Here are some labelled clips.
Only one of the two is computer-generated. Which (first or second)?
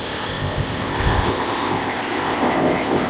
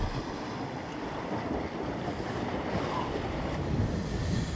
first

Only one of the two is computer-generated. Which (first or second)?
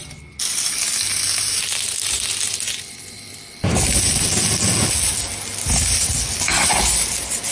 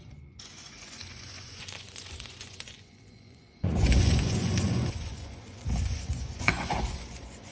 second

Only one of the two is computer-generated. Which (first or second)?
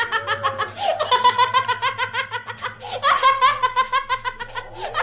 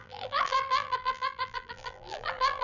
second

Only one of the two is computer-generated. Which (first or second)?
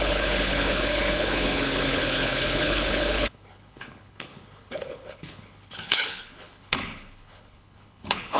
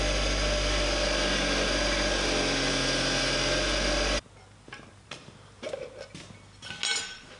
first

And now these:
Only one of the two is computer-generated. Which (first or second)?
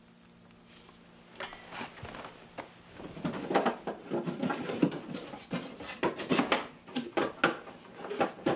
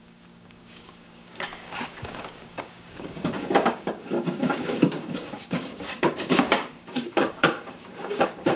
second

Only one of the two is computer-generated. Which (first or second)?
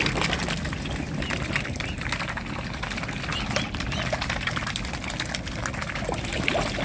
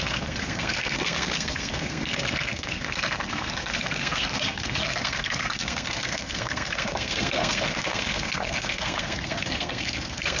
second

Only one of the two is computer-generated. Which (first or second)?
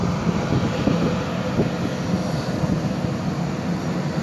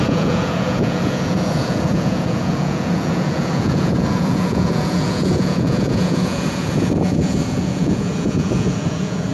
second